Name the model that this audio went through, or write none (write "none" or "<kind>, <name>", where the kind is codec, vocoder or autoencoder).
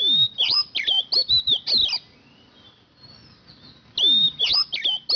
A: none